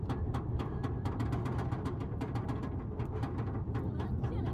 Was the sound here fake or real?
real